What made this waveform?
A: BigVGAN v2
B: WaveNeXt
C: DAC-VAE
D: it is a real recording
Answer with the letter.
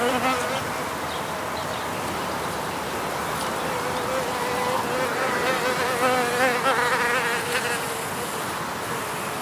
D